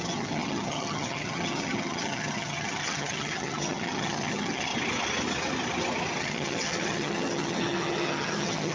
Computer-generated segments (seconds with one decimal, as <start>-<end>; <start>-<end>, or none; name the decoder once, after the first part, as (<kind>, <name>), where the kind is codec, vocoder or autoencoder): 0.0-4.7 (vocoder, HiFi-GAN); 6.2-8.7